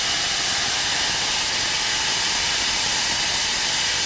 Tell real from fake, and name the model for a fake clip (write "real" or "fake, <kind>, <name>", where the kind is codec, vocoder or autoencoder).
real